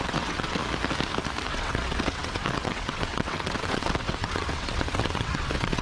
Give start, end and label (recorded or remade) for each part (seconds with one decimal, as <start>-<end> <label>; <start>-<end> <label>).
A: 0.0-0.6 remade; 0.6-1.5 recorded; 1.5-5.8 remade

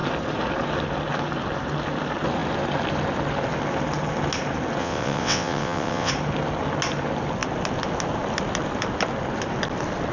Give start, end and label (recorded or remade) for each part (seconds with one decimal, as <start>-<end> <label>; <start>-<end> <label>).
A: 0.0-4.8 recorded; 4.8-6.1 remade; 6.1-10.1 recorded

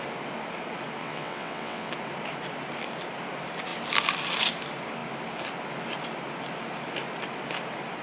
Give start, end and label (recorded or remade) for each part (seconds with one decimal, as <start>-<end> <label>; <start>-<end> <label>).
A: 0.0-1.0 recorded; 1.0-1.9 remade; 1.9-8.0 recorded

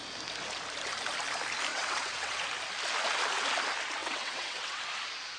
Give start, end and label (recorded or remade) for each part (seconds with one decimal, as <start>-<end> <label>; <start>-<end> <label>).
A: 0.0-1.7 recorded; 1.7-2.4 remade; 2.4-4.0 recorded; 4.0-4.8 remade; 4.8-5.4 recorded

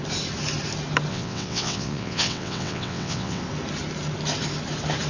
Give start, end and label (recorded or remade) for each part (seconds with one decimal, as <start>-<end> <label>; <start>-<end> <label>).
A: 0.0-1.1 recorded; 1.1-3.4 remade; 3.4-5.1 recorded